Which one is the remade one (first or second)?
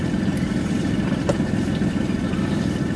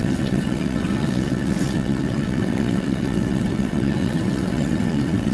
second